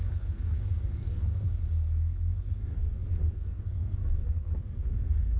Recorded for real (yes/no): no